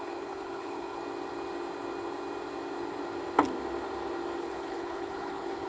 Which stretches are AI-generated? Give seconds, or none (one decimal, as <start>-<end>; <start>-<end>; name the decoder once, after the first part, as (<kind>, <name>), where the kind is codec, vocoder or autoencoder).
0.0-1.0 (codec, HILCodec); 4.4-5.7